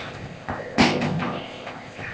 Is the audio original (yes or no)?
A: no